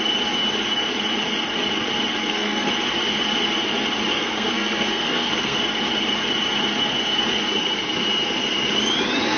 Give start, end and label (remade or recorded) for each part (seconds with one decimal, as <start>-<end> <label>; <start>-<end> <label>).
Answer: 0.0-2.2 recorded; 2.2-2.7 remade; 2.7-4.1 recorded; 4.1-5.6 remade; 5.6-9.4 recorded